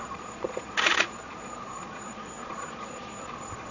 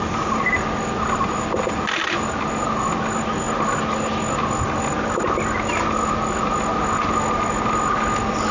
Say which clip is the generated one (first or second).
first